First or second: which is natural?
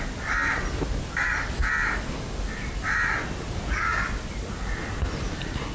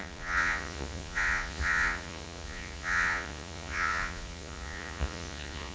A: first